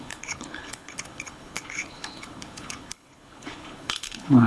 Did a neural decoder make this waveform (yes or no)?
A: yes